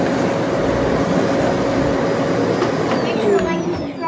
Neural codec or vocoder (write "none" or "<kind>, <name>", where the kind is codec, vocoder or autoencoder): none